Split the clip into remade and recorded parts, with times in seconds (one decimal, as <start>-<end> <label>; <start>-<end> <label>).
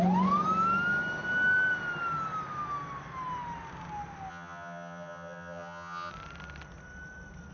0.0-4.3 recorded; 4.3-6.1 remade; 6.1-7.5 recorded